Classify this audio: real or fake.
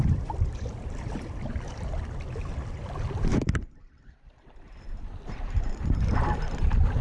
fake